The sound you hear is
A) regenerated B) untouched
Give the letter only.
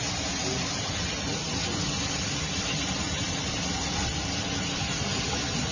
B